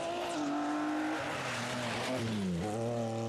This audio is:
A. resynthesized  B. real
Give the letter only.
B